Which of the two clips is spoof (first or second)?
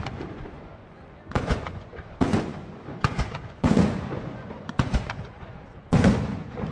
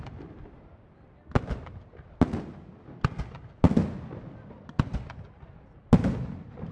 first